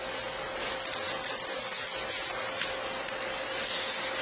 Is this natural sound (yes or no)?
yes